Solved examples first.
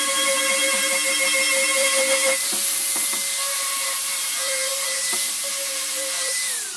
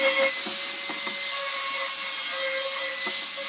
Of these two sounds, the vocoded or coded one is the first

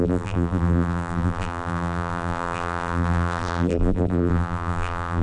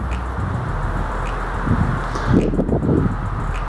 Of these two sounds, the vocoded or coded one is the first